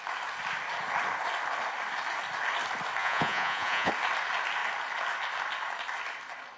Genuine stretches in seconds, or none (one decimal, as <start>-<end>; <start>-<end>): 0.0-3.0; 3.9-6.6